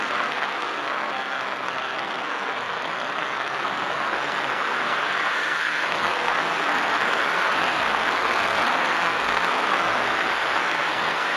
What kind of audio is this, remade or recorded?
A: remade